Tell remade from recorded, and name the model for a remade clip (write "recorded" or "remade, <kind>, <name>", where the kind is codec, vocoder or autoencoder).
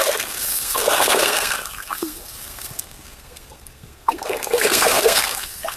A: remade, codec, SNAC